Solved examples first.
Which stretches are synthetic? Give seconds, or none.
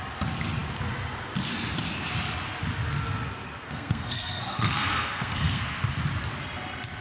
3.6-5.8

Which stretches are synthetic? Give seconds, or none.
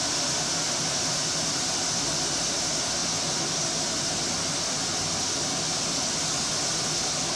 none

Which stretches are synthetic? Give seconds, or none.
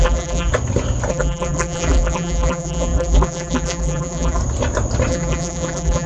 0.0-0.5; 1.1-4.4; 5.1-6.1